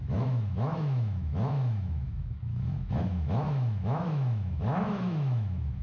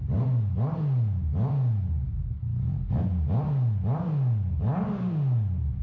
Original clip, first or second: second